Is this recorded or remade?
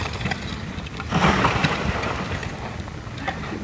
recorded